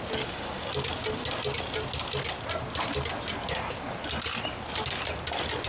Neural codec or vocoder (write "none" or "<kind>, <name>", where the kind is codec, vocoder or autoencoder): none